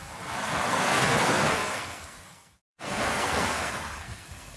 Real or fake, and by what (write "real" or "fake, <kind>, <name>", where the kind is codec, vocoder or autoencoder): fake, codec, SNAC